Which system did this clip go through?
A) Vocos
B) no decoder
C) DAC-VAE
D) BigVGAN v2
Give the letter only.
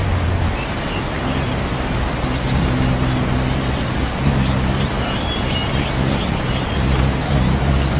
B